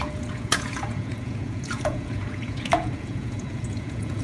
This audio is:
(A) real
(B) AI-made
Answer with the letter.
B